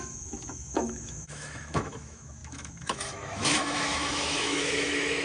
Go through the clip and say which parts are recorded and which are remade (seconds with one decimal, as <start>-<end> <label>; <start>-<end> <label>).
0.0-5.2 remade